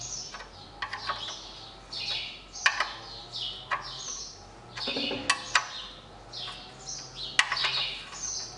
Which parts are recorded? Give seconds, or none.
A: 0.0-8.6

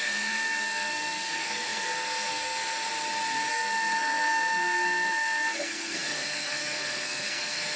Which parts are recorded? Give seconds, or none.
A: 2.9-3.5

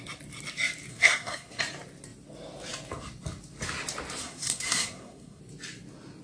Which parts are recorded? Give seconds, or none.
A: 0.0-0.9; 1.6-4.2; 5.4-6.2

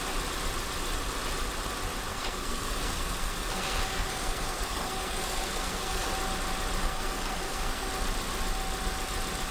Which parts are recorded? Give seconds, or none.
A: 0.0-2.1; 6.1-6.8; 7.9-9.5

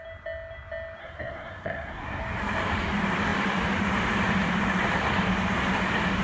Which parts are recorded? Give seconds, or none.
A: 0.0-1.0; 2.2-6.2